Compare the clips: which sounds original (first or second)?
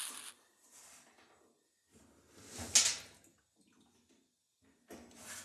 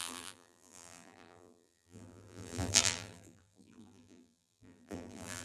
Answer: first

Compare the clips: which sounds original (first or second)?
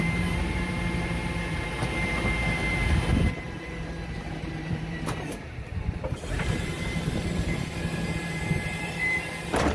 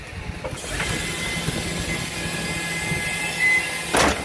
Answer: second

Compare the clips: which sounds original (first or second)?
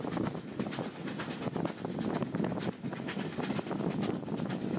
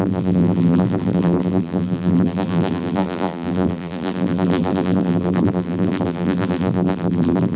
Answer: first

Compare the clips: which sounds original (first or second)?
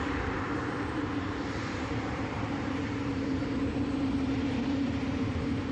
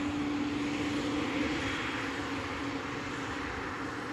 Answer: second